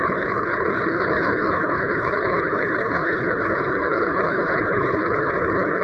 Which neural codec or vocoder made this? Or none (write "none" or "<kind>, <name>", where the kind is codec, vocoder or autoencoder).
codec, HILCodec